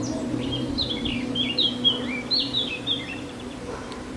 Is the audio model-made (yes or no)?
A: yes